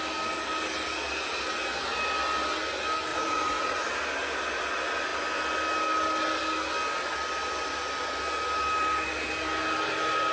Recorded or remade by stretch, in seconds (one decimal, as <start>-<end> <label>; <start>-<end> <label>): 0.0-3.1 recorded; 3.1-3.8 remade; 3.8-10.3 recorded